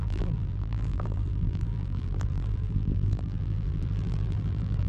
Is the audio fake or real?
fake